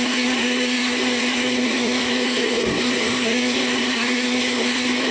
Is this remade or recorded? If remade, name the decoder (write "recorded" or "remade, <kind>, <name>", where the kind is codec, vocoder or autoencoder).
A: remade, codec, SNAC